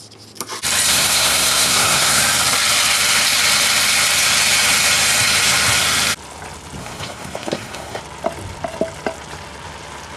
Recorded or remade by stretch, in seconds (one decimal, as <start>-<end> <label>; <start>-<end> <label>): 0.0-0.9 recorded; 0.9-2.2 remade; 2.2-6.8 recorded; 6.8-8.0 remade; 8.0-10.2 recorded